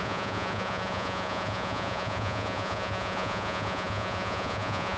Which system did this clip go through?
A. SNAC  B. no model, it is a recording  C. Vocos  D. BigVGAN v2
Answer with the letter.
C